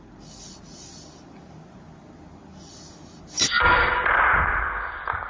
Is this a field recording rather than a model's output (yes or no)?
yes